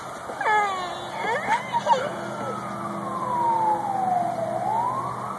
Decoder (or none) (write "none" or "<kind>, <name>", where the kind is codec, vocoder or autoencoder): none